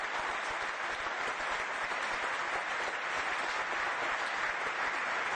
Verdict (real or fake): real